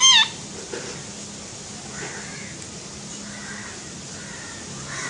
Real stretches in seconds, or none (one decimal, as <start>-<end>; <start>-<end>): 0.0-5.1